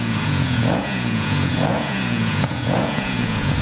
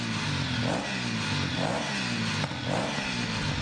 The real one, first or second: second